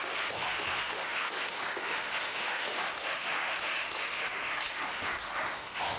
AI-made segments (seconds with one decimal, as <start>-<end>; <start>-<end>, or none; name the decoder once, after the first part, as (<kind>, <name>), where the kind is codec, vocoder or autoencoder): 0.0-6.0 (autoencoder, DAC-VAE)